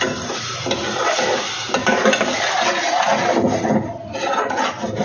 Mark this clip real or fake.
real